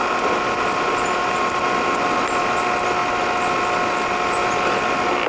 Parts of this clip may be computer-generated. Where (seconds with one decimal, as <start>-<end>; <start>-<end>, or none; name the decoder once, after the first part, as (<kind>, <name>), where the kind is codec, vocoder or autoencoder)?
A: none